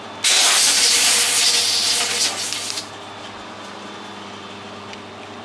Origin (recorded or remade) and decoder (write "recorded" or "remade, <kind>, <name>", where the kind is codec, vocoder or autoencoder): recorded